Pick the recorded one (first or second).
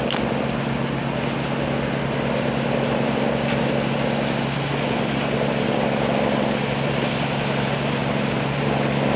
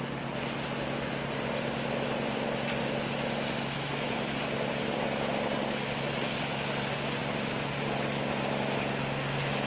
second